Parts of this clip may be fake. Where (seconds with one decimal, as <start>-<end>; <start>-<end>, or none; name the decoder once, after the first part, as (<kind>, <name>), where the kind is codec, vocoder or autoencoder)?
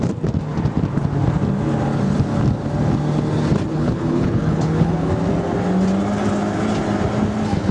3.7-5.1 (codec, HILCodec)